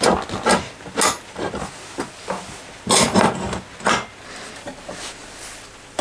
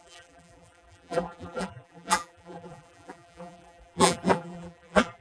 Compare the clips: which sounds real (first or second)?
first